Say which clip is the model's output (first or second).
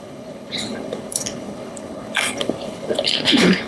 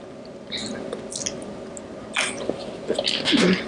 first